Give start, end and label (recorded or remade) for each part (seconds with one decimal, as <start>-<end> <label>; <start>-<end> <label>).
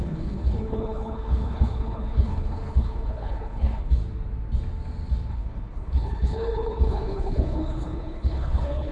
0.0-4.0 remade; 4.0-5.3 recorded; 5.3-8.9 remade